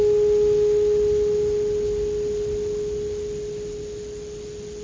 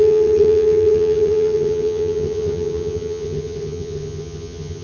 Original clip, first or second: first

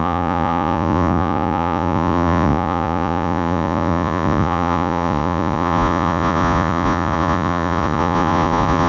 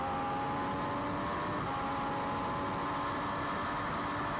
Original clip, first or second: second